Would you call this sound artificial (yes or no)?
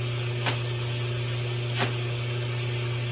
no